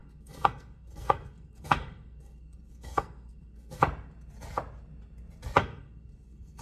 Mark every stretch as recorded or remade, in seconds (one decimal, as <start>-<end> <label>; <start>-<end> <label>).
0.0-3.8 remade; 3.8-5.6 recorded; 5.6-6.6 remade